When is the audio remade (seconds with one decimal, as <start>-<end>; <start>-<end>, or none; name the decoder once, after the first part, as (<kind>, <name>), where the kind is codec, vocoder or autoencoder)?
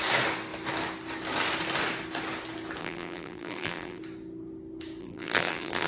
2.8-4.0 (vocoder, BigVGAN v2); 5.0-5.9